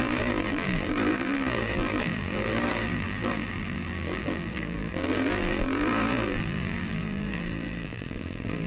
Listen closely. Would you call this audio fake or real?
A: fake